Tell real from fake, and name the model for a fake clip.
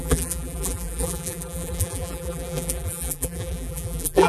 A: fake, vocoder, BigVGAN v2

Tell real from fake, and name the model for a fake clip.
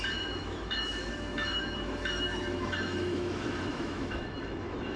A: fake, autoencoder, DAC-VAE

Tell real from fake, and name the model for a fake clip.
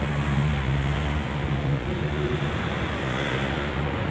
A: fake, vocoder, Vocos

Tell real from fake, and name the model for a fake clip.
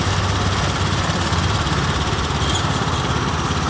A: real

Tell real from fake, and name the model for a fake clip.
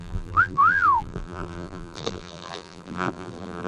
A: fake, vocoder, BigVGAN v2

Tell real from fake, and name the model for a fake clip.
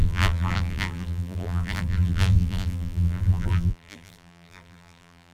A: fake, vocoder, BigVGAN v2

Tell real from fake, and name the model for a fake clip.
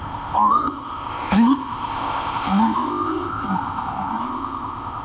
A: fake, codec, ZipCodec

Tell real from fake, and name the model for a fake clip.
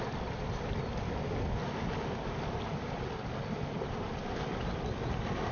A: real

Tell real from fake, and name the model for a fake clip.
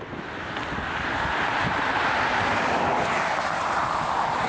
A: real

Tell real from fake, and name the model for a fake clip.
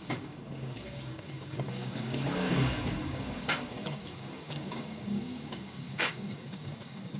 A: fake, codec, DAC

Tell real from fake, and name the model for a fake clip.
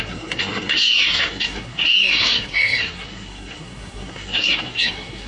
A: fake, codec, SNAC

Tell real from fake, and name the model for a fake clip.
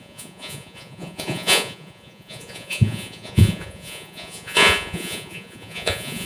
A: fake, vocoder, Vocos